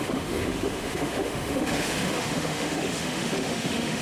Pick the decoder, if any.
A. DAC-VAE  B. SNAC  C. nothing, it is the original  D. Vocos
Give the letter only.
A